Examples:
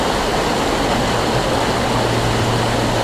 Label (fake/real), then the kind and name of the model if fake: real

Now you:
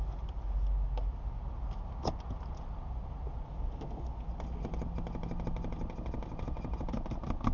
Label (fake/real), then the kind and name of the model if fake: real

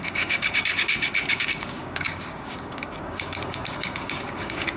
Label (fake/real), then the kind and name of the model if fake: fake, codec, DAC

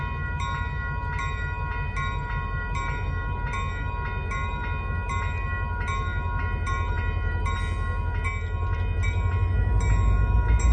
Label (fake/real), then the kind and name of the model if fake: real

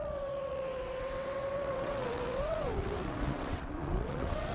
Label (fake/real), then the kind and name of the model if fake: fake, vocoder, WaveNeXt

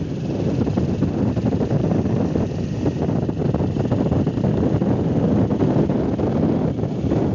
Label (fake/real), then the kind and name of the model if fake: real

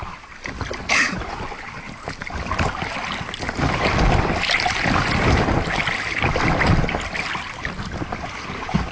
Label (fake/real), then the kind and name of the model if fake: real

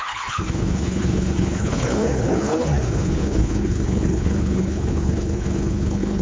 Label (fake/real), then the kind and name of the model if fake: fake, codec, HILCodec